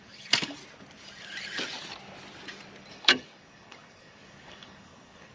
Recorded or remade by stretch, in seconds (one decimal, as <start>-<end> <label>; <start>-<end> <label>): 0.0-0.6 remade; 0.6-2.9 recorded; 2.9-5.3 remade